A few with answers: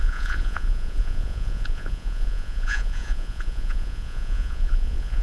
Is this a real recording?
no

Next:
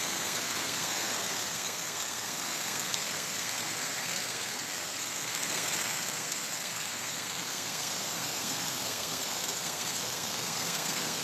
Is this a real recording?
no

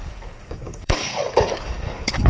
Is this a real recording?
no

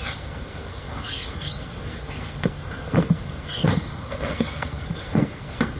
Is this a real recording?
no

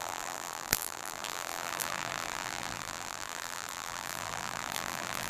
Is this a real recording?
no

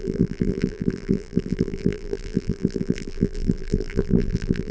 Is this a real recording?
no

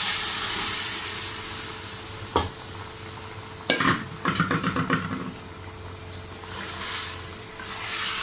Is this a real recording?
yes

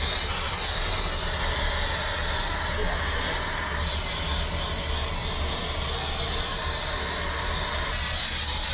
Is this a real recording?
yes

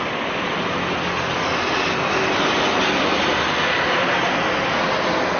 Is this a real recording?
yes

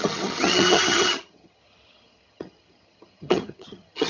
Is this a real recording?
no